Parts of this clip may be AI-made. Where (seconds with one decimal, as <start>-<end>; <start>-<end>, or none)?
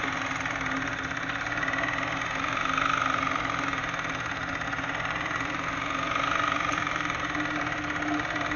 none